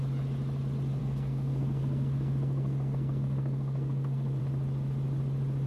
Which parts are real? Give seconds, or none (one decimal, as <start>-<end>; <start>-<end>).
0.0-1.0; 4.4-5.7